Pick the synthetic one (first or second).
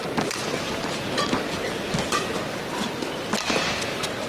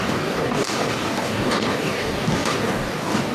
second